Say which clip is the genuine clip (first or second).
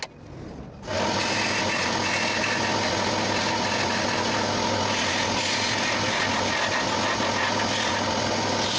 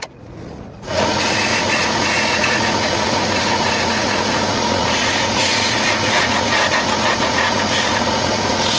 first